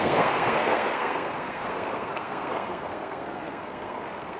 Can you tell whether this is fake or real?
fake